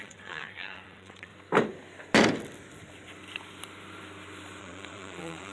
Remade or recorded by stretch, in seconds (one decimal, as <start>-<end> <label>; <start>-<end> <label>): 0.0-1.3 remade; 1.3-4.6 recorded; 4.6-5.5 remade